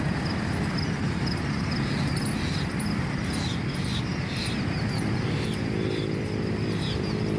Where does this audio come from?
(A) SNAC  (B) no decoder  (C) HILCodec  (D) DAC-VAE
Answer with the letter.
B